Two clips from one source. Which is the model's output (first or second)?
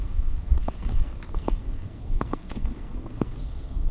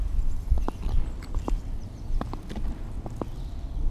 first